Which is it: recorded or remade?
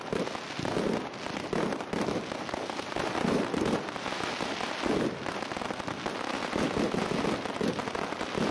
recorded